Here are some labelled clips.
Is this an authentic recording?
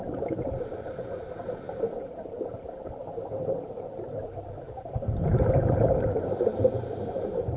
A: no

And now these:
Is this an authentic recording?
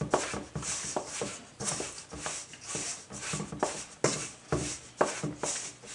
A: yes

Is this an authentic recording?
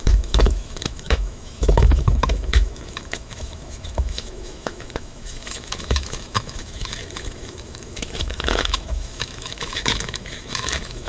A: no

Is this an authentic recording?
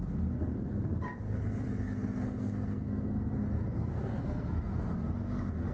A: no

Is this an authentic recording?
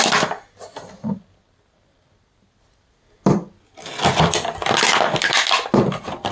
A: yes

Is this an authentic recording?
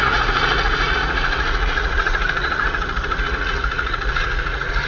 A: no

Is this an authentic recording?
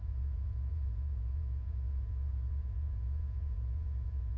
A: no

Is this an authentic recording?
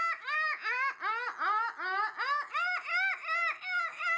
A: yes